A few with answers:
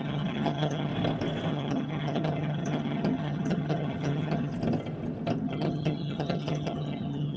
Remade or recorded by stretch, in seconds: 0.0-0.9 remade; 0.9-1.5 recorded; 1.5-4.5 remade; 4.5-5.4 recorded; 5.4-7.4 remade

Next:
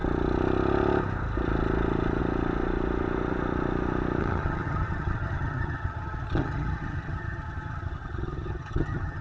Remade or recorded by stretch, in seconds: 0.0-4.2 recorded; 4.2-9.2 remade

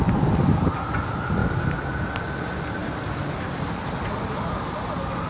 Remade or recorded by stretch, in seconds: 0.0-5.3 recorded